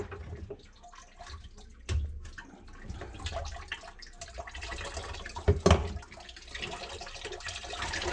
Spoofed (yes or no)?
no